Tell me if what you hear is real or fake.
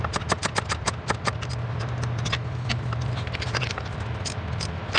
real